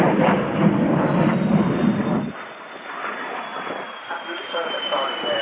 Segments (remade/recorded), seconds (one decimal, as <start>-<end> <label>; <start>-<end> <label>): 0.0-5.4 recorded